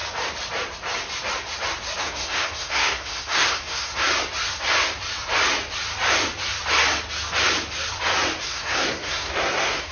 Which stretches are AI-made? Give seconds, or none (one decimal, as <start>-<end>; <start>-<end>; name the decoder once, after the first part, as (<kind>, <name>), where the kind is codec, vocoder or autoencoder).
2.0-3.9 (codec, SNAC); 8.4-9.9